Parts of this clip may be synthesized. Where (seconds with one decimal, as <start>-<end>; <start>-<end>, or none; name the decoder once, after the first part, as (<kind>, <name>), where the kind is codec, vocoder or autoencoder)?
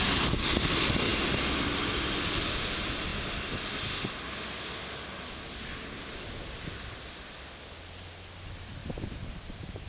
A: 8.8-9.5 (vocoder, BigVGAN v2)